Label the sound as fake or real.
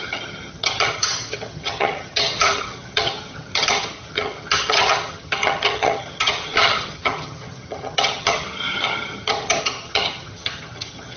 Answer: fake